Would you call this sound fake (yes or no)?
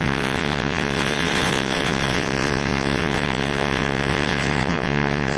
yes